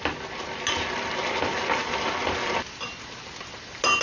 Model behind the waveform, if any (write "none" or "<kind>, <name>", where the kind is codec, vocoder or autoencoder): none